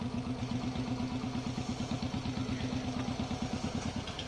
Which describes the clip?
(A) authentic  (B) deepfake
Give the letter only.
A